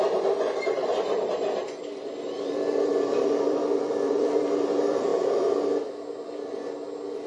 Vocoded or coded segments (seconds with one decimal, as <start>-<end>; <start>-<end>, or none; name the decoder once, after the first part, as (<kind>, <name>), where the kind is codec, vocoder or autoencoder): 0.0-5.1 (vocoder, BigVGAN v2)